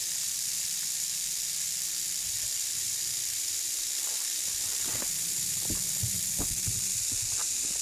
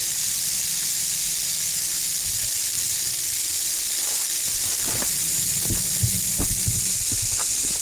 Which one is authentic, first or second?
second